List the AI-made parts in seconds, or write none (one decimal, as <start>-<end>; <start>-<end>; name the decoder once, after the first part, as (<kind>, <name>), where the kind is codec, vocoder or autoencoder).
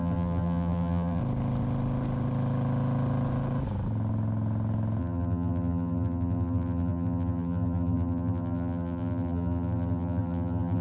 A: 0.0-1.2 (vocoder, BigVGAN v2); 5.0-10.8